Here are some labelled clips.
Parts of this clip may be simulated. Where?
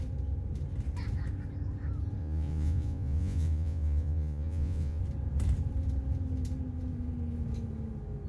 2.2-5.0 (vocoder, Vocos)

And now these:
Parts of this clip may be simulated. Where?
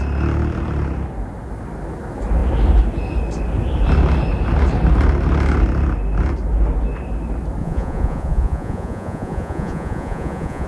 7.6-10.7 (vocoder, Vocos)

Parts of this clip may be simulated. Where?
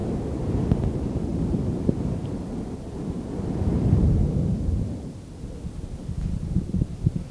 none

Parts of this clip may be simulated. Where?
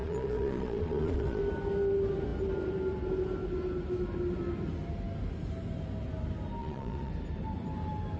0.0-1.4 (vocoder, Vocos); 6.6-7.1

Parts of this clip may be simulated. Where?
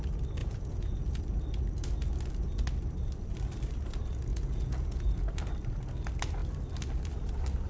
0.4-1.2 (vocoder, Vocos); 4.3-5.2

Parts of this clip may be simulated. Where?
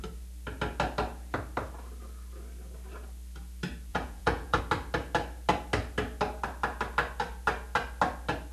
3.9-4.6 (vocoder, Vocos)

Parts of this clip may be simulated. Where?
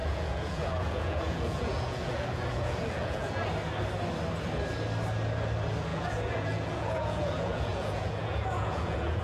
0.0-3.5 (vocoder, Vocos); 5.9-9.2